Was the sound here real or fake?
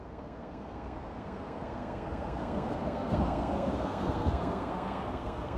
fake